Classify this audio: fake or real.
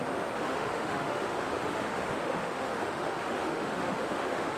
fake